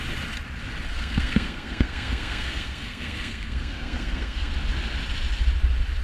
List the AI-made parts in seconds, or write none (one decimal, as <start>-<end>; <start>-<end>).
0.9-4.5